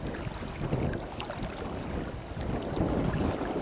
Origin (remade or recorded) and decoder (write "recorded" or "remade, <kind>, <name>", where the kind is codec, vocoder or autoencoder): recorded